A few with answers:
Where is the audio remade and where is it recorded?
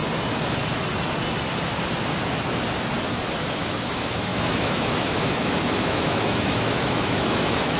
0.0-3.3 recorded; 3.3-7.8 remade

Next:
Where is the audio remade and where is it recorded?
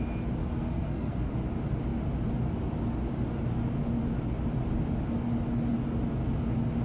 0.0-0.4 recorded; 0.4-1.3 remade; 1.3-6.8 recorded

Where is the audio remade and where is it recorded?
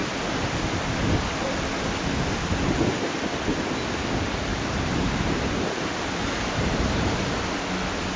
0.0-4.5 recorded; 4.5-7.6 remade; 7.6-8.2 recorded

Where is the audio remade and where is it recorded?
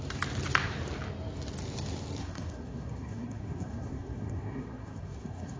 0.0-2.2 recorded; 2.2-5.6 remade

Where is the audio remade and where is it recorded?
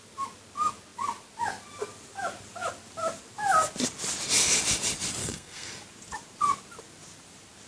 0.0-5.2 recorded; 5.2-5.7 remade; 5.7-7.7 recorded